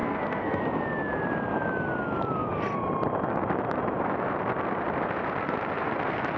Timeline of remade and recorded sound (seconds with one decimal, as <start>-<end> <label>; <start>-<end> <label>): 0.0-0.6 remade; 0.6-6.4 recorded